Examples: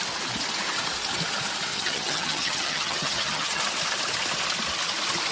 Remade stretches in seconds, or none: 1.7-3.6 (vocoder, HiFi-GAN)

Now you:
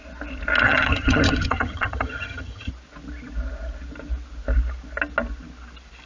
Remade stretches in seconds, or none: 0.6-2.7 (vocoder, HiFi-GAN)